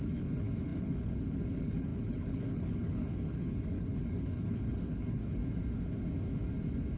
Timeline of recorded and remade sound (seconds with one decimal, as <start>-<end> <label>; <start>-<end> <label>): 0.0-5.4 remade; 5.4-7.0 recorded